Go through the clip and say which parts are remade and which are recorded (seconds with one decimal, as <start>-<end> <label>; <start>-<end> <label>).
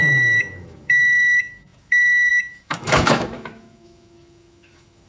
0.0-5.1 remade